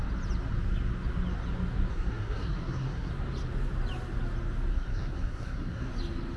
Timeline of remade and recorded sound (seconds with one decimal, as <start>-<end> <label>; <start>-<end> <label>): 0.0-1.9 recorded; 1.9-3.1 remade; 3.1-4.7 recorded; 4.7-5.9 remade; 5.9-6.4 recorded